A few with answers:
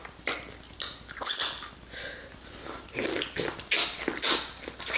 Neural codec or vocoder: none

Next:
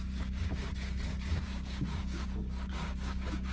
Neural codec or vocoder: codec, DAC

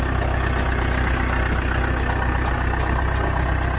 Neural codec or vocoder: none